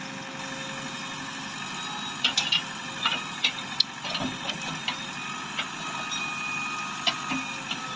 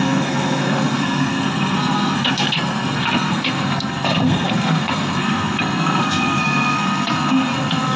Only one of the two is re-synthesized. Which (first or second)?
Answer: second